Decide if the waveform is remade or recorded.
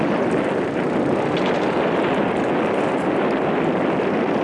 recorded